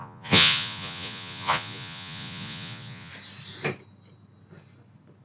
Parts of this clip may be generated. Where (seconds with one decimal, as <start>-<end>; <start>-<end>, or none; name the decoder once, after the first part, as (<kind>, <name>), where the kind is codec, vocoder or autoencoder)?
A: 0.0-3.1 (vocoder, Vocos)